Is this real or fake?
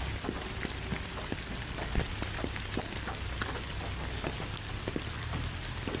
real